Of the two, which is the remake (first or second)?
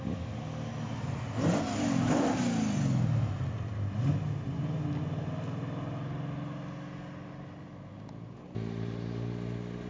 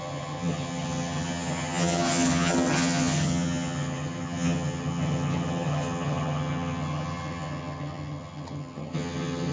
second